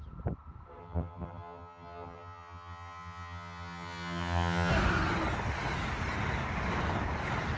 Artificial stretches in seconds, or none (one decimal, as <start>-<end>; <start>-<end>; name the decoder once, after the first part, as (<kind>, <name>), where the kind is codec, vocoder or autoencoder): 0.8-4.7 (vocoder, HiFi-GAN)